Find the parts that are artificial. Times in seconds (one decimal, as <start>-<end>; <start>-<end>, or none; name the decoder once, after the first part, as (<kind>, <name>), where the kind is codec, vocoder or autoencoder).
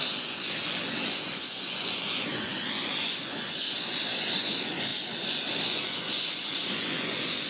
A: 0.0-7.5 (vocoder, Vocos)